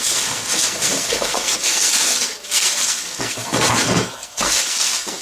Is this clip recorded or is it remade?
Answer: remade